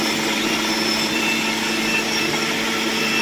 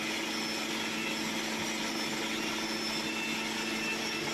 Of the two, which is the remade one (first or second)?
first